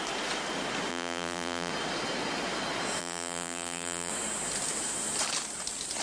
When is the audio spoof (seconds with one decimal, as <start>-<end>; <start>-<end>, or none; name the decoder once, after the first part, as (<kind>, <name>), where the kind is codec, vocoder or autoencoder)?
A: 0.9-1.7 (vocoder, BigVGAN v2); 3.0-4.1